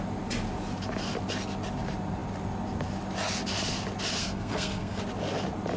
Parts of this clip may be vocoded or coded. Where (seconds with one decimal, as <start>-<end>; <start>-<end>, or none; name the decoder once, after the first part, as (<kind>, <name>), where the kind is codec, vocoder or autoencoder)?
4.2-5.0 (codec, SNAC)